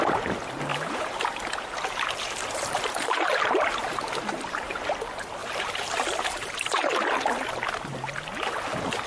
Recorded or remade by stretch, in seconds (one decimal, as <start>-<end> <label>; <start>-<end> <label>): 0.0-0.7 recorded; 0.7-5.0 remade; 5.0-5.4 recorded; 5.4-7.5 remade; 7.5-9.1 recorded